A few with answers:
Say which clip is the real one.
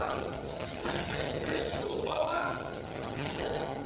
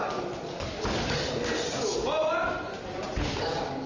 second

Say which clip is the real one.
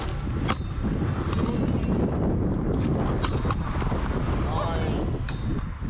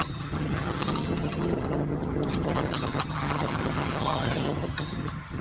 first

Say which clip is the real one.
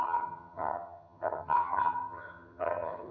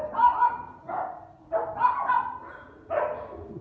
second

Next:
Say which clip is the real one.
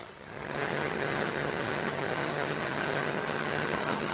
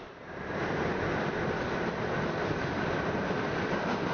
second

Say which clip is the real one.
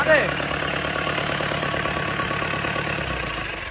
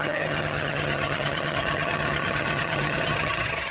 first